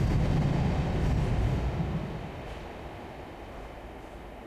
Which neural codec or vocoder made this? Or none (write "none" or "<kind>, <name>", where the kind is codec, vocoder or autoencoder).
none